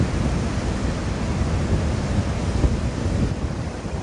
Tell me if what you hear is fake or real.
real